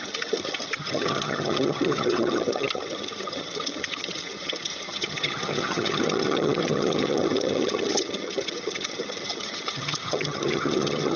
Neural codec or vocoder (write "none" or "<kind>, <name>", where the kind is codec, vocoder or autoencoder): vocoder, HiFi-GAN